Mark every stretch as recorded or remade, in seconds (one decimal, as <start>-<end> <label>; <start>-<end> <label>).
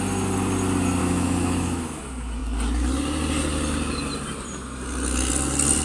0.0-1.0 recorded; 1.0-2.0 remade; 2.0-5.8 recorded